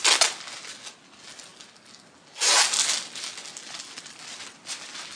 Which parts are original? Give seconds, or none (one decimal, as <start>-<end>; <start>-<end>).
0.0-5.2

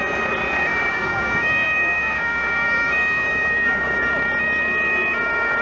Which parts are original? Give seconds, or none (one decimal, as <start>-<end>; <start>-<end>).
0.0-0.7; 4.1-5.6